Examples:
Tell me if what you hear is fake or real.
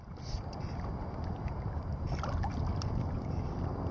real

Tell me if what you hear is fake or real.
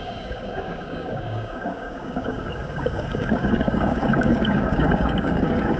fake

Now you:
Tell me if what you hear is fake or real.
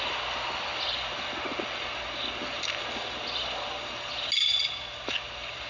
real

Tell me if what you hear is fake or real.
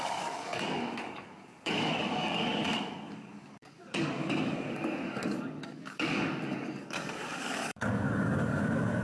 fake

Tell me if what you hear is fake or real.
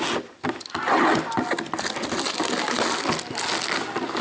real